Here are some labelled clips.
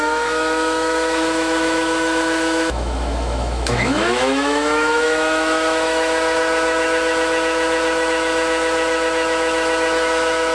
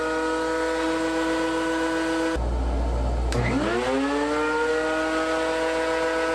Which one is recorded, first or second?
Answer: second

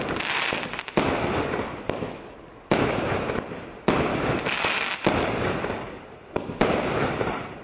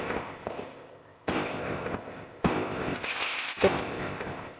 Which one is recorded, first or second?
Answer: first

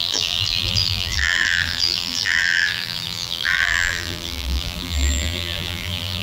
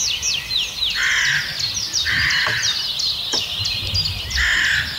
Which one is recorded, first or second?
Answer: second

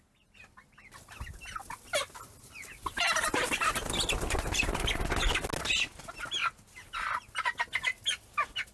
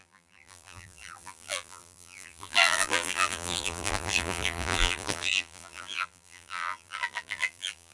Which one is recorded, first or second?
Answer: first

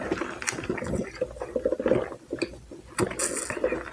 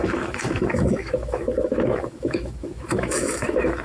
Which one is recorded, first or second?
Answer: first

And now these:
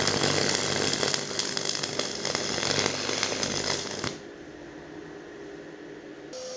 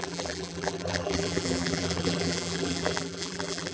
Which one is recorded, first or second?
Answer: first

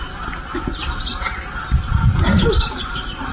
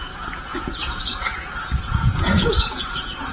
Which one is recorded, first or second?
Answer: first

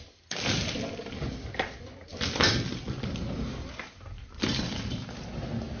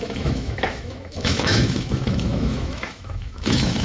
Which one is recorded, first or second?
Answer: first